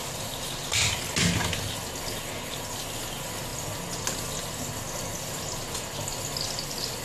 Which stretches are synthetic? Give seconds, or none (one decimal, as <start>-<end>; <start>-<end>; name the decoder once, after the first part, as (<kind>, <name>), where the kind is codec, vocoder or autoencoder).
none